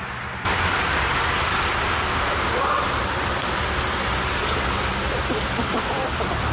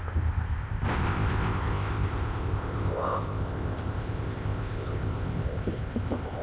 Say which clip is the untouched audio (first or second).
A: first